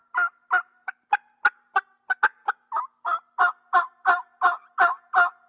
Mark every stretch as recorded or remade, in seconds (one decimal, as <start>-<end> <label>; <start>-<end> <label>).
0.0-5.5 recorded